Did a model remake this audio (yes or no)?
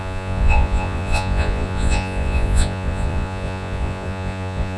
yes